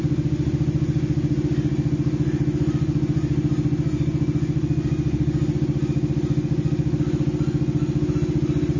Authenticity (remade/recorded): recorded